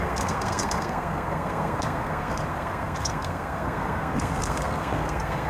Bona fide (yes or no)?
no